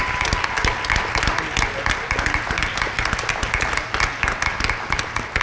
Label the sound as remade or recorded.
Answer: recorded